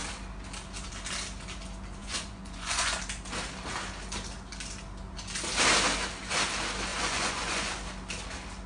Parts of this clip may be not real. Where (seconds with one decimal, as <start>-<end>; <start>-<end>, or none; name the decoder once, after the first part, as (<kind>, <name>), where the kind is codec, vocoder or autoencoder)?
2.0-3.0 (vocoder, Vocos); 6.9-7.7